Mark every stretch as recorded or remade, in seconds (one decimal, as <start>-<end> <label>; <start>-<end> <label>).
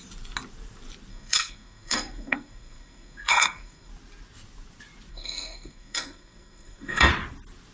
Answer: 0.0-1.1 recorded; 1.1-3.9 remade; 3.9-5.1 recorded; 5.1-7.1 remade; 7.1-7.7 recorded